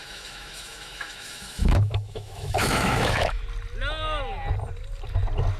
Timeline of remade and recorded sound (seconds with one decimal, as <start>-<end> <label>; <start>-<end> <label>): 0.0-3.4 remade; 3.4-5.6 recorded